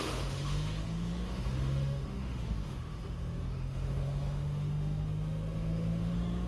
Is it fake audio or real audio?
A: fake